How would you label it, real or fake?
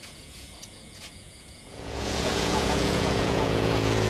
fake